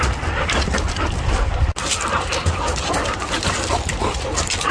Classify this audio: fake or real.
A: real